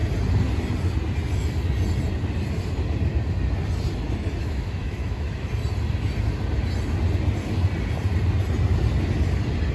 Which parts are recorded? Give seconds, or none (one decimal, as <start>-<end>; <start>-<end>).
0.0-4.4; 5.5-9.7